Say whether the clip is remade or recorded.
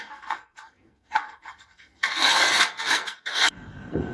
remade